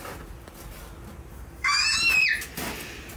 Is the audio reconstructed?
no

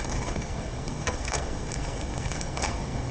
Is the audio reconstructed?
yes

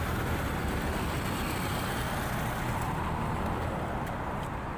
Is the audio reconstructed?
no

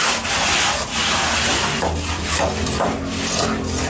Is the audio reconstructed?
no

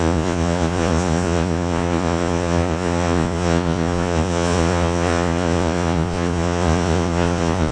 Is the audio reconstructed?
yes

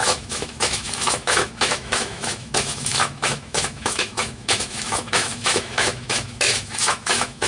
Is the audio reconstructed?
yes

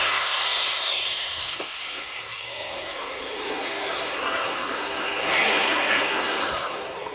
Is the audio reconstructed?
yes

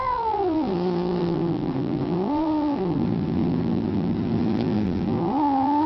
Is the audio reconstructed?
yes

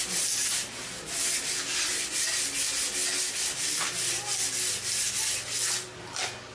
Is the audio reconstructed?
no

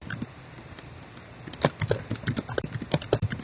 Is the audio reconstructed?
yes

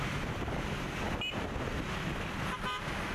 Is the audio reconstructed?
no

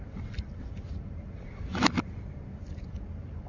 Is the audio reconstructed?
no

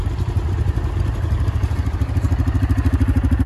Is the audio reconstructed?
no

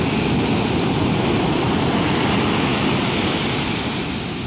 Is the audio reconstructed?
no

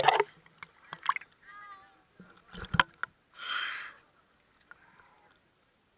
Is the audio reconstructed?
no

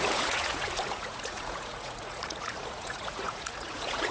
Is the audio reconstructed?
yes